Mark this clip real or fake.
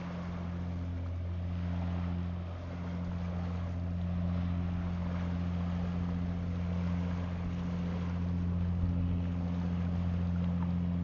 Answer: real